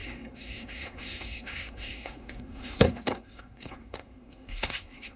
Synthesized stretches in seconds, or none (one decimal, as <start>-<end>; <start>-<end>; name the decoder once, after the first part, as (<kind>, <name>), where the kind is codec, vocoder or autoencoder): 0.0-5.2 (codec, SNAC)